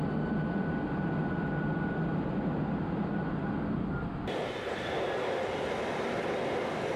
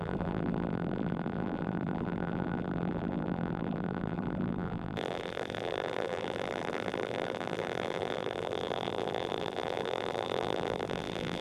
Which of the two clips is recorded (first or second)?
first